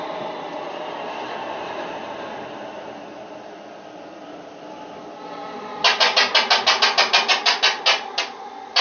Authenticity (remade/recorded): recorded